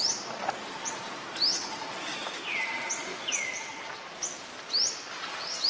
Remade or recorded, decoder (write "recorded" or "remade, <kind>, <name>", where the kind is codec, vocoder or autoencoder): recorded